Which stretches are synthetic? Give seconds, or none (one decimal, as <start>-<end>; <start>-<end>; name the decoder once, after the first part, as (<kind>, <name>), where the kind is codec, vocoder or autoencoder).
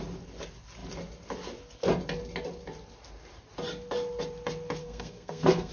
4.8-5.7 (codec, SNAC)